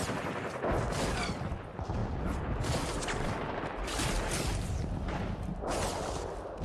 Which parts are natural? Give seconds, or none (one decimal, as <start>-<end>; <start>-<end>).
0.0-6.6